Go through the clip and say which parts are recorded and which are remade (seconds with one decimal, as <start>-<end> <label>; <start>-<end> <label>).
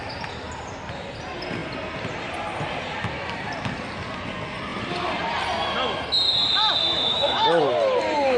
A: 0.0-6.8 recorded; 6.8-7.6 remade; 7.6-8.4 recorded